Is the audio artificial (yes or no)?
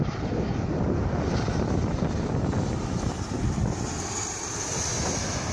no